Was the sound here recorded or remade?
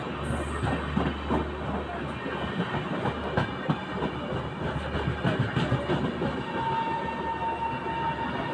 recorded